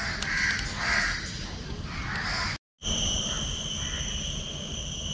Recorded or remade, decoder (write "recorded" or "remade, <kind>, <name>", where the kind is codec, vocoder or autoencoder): recorded